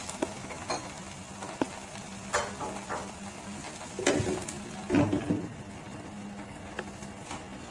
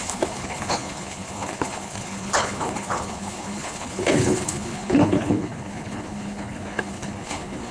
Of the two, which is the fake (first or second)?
second